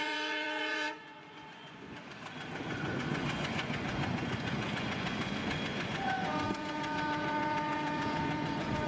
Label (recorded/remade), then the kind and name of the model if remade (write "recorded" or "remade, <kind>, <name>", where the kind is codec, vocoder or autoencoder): remade, vocoder, Vocos